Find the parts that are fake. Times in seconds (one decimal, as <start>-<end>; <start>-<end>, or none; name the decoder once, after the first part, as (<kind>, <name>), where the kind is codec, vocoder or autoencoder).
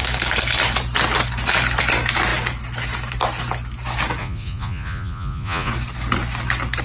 4.2-5.7 (vocoder, Vocos)